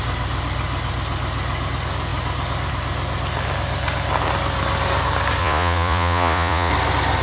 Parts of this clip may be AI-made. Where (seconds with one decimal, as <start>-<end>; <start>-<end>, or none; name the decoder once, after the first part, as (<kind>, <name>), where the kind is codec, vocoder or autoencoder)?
5.4-6.7 (vocoder, Vocos)